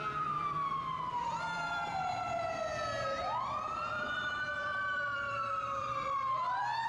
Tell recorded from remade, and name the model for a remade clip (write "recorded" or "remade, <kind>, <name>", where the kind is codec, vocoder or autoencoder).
remade, vocoder, BigVGAN v2